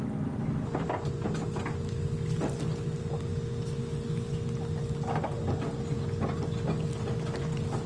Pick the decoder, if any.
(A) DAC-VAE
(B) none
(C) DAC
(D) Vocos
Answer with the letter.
B